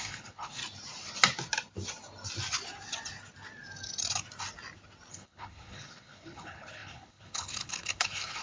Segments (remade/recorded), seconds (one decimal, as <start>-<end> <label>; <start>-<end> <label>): 0.0-0.6 remade; 0.6-5.1 recorded; 5.1-8.4 remade